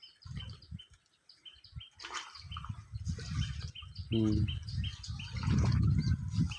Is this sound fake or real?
real